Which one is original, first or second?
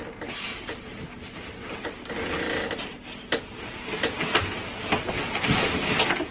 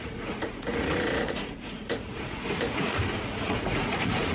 first